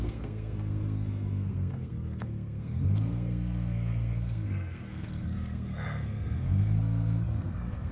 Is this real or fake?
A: fake